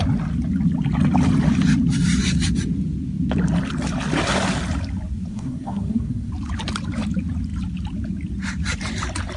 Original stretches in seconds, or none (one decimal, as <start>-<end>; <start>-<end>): 0.0-5.3; 6.3-9.4